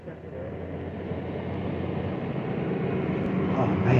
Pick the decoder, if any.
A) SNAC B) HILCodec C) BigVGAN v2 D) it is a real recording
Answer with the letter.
D